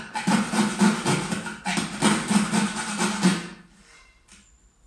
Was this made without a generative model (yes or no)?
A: yes